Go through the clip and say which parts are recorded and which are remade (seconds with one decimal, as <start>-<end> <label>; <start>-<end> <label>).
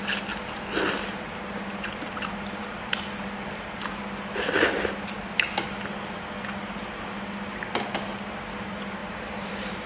0.0-9.9 recorded